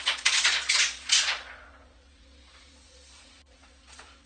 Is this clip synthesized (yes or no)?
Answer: yes